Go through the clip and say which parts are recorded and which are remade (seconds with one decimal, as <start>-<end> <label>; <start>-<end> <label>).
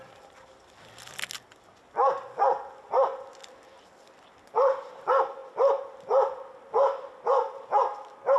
0.0-8.4 recorded